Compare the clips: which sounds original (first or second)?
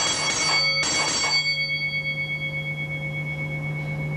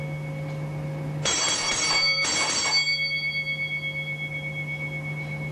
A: first